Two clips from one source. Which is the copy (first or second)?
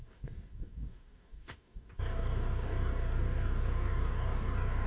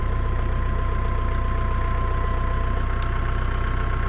first